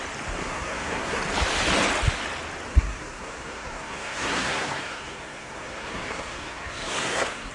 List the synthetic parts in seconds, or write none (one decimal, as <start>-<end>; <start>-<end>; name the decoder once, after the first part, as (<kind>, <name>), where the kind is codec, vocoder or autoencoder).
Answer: 0.4-1.2 (codec, SNAC); 2.7-7.5

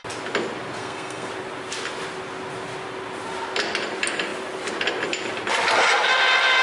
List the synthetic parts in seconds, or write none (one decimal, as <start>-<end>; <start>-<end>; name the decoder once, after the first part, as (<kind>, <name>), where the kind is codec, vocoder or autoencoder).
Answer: 0.8-1.3 (codec, SNAC)

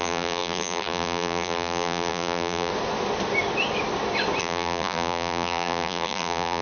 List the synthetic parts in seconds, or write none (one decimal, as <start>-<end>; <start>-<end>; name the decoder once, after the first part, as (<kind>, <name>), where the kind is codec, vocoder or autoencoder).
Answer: 0.0-2.7 (vocoder, BigVGAN v2); 4.4-6.6